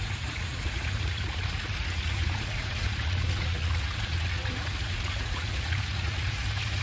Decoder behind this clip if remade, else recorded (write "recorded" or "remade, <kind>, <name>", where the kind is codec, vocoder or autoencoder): remade, vocoder, Vocos